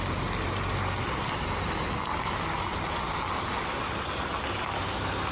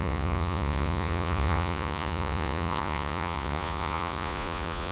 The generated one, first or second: second